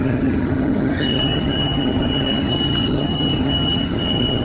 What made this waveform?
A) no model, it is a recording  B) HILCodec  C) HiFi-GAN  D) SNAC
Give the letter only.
C